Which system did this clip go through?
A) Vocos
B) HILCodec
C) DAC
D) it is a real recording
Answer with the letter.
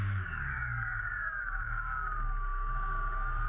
C